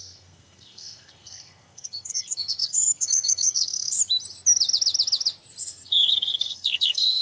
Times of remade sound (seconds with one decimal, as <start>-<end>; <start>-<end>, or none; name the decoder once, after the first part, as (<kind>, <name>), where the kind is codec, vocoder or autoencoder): 0.0-4.0 (codec, SNAC); 5.6-7.2